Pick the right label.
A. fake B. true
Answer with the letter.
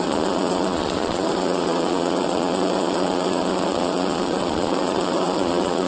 A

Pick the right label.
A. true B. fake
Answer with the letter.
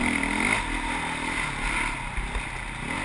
A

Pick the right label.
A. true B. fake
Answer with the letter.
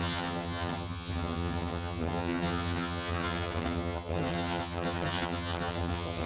B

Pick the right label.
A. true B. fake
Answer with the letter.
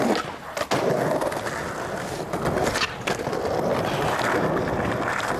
A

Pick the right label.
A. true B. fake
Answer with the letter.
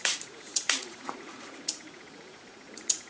B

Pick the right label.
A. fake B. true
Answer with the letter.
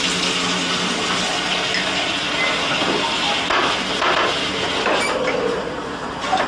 B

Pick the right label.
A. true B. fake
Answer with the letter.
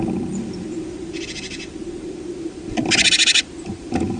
B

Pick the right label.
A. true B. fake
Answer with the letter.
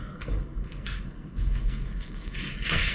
B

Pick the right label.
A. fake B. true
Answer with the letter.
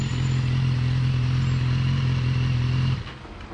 B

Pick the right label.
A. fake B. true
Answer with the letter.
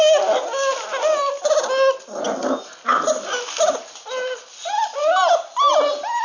B